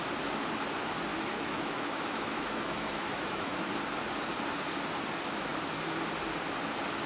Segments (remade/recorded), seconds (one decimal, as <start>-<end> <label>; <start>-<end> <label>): 0.0-1.1 recorded; 1.1-3.7 remade; 3.7-7.1 recorded